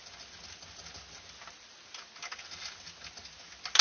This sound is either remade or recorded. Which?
recorded